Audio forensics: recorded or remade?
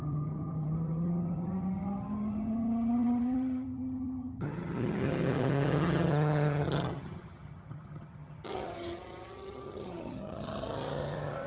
remade